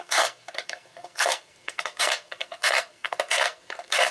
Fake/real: fake